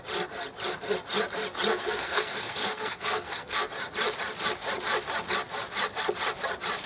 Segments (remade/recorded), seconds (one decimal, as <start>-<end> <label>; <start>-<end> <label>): 0.0-1.7 recorded; 1.7-3.7 remade; 3.7-6.9 recorded